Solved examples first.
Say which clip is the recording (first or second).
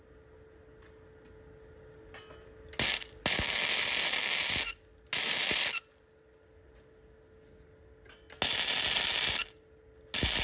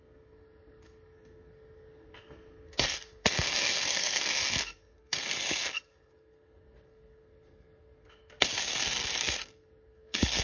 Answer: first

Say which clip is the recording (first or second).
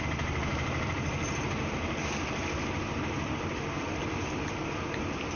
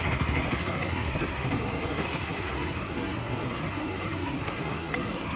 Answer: first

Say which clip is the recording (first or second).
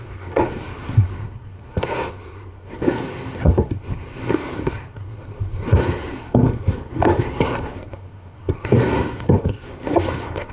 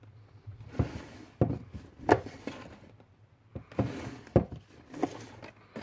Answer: second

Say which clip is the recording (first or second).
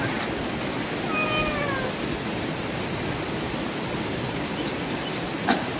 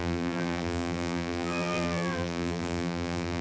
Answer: first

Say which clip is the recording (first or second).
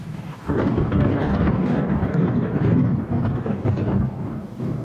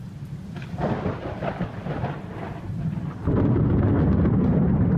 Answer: second